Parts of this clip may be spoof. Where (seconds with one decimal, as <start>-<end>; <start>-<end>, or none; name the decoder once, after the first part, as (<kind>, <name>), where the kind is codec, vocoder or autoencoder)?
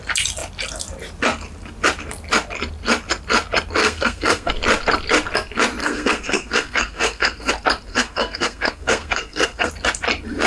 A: 3.8-4.5 (codec, SNAC); 5.8-7.5; 7.9-9.7